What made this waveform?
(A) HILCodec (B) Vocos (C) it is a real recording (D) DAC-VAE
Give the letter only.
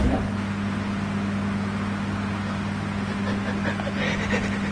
C